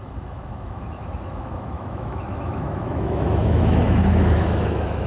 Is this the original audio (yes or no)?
no